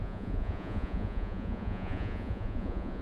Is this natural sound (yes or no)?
no